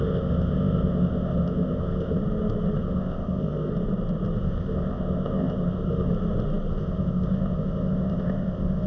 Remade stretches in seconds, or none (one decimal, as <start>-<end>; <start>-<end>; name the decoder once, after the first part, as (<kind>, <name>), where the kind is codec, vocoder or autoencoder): 0.0-2.2 (codec, ZipCodec); 2.8-3.7; 4.4-6.1; 6.7-8.9